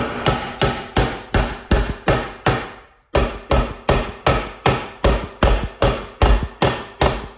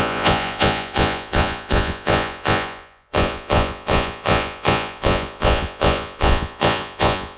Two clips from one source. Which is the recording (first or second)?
first